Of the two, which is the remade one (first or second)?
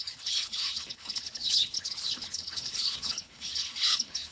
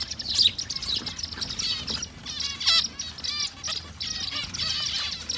first